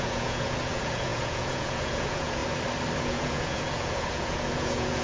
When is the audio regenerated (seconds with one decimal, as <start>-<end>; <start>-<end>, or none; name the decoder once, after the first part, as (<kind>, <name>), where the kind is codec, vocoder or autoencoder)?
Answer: 0.0-2.4 (vocoder, Vocos); 3.0-5.0